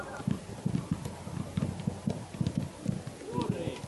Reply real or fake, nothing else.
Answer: fake